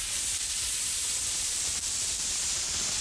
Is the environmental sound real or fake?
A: real